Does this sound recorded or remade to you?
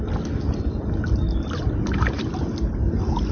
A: recorded